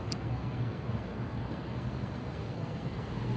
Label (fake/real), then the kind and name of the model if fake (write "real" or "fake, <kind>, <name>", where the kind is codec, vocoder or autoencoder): fake, codec, SNAC